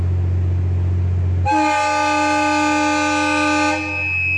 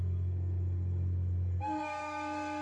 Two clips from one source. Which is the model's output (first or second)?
second